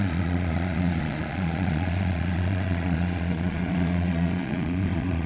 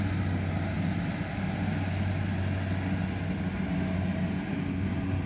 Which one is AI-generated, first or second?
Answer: first